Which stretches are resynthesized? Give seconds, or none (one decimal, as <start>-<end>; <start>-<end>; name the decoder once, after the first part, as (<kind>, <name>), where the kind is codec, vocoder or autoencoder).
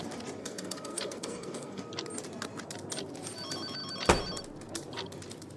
0.4-1.8 (codec, SNAC)